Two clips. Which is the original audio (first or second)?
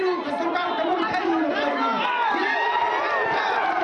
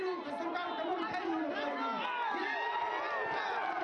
second